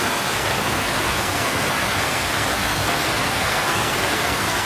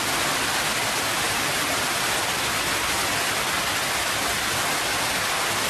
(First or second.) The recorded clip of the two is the second